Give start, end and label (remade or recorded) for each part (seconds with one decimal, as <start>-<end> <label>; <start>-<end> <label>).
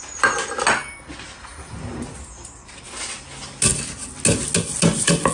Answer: 0.0-5.3 recorded